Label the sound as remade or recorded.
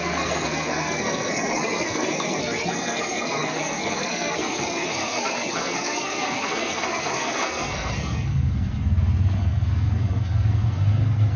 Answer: remade